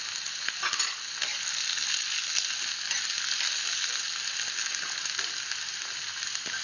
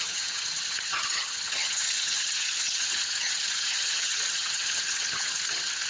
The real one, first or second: first